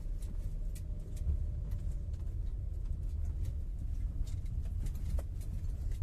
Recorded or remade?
recorded